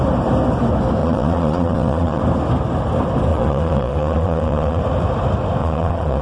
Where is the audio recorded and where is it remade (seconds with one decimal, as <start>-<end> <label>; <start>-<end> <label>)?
0.0-1.0 recorded; 1.0-2.2 remade; 2.2-3.3 recorded; 3.3-4.8 remade; 4.8-5.6 recorded; 5.6-6.2 remade